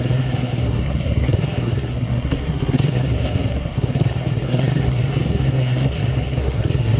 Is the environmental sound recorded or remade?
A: remade